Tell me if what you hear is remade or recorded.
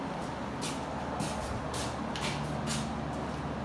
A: recorded